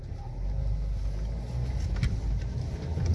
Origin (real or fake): real